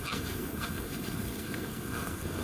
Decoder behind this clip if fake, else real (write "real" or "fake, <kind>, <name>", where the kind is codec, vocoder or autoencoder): fake, codec, SNAC